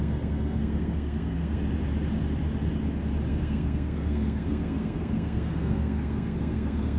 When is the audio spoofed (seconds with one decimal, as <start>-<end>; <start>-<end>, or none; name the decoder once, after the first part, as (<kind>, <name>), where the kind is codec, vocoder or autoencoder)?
0.0-1.6 (codec, SNAC); 3.3-7.0